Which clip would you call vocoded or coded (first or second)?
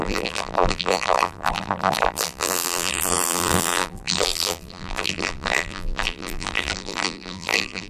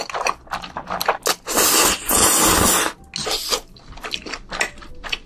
first